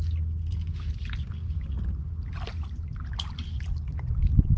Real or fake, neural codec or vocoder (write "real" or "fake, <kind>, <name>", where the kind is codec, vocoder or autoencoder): real